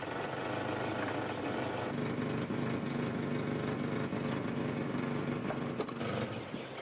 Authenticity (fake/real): real